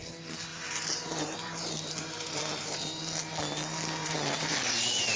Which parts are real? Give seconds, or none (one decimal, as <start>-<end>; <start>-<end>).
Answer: 0.0-0.5; 2.4-4.0